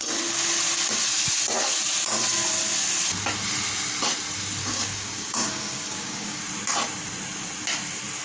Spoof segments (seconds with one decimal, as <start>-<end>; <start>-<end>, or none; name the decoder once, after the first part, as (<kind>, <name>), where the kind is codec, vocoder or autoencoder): 4.6-6.4 (codec, DAC)